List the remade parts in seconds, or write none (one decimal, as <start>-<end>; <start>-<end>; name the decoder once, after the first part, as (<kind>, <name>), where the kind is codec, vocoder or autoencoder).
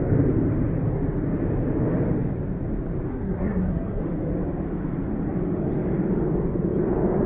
3.1-4.0 (codec, SNAC)